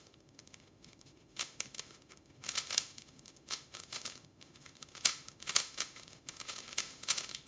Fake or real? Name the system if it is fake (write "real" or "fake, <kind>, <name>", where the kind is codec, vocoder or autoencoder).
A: fake, autoencoder, DAC-VAE